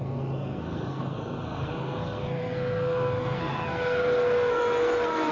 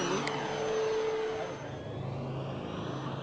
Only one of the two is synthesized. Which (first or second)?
first